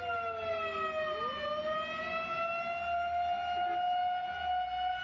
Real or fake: real